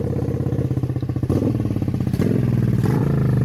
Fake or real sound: real